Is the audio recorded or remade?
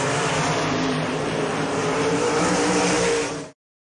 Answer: remade